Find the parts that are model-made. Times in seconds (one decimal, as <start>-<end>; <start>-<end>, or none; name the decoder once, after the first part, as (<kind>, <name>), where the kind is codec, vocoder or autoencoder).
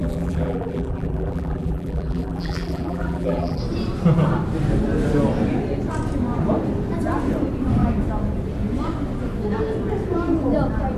0.0-3.6 (vocoder, BigVGAN v2)